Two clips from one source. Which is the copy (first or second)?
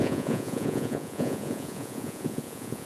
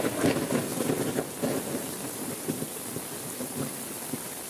first